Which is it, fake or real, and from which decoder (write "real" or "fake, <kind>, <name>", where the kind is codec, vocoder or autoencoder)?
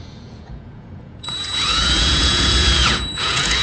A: fake, vocoder, Vocos